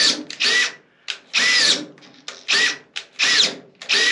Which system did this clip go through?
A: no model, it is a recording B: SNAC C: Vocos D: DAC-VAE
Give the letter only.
A